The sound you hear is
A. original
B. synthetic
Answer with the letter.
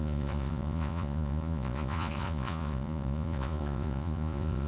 B